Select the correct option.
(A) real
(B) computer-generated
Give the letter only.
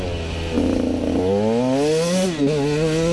A